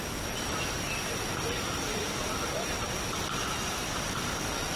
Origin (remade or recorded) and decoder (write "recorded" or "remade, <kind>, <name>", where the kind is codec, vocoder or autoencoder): remade, vocoder, BigVGAN v2